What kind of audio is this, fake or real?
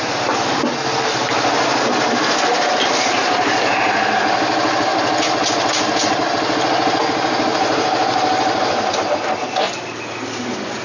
real